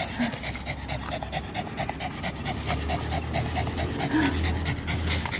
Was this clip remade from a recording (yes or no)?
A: no